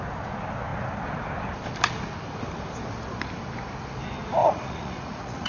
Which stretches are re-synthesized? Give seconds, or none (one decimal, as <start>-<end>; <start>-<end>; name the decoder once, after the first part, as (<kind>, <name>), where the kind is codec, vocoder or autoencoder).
4.4-5.5 (vocoder, Vocos)

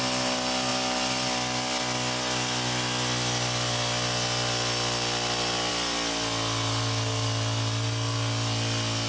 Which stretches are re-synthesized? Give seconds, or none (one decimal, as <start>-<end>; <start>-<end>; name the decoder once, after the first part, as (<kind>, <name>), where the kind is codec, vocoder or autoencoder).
none

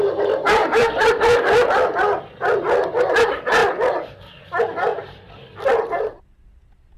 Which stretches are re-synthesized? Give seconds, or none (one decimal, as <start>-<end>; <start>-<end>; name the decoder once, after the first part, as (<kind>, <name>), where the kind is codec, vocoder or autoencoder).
0.6-1.4 (vocoder, BigVGAN v2); 4.9-5.4

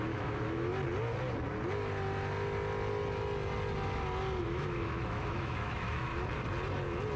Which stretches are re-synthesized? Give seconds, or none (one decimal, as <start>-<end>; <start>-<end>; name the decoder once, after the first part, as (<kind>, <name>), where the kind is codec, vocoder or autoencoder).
0.0-0.7 (autoencoder, DAC-VAE); 4.4-6.1

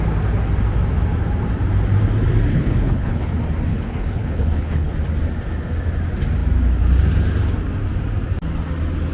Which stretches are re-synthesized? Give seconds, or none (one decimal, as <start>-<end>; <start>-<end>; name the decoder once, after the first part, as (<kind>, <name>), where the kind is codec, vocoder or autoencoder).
2.5-3.3 (codec, HILCodec); 3.7-4.9